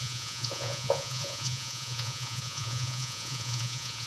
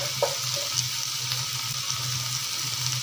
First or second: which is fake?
first